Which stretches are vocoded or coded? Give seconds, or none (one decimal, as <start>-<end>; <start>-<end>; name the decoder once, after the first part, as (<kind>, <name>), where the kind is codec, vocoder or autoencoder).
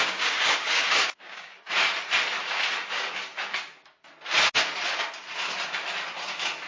0.0-1.7 (codec, DAC)